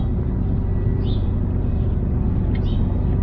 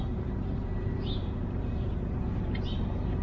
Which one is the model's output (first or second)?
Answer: second